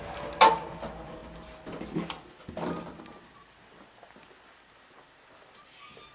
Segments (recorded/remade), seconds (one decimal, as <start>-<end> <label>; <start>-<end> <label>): 0.0-6.1 recorded